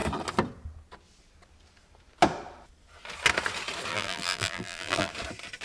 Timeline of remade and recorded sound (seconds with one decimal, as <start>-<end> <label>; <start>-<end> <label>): 0.0-3.9 recorded; 3.9-5.1 remade; 5.1-5.6 recorded